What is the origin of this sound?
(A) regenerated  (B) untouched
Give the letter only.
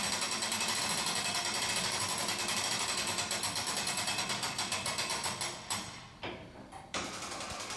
A